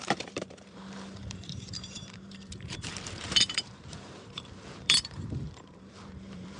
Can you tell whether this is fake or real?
fake